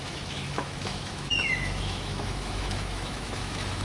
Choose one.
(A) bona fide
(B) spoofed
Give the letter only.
B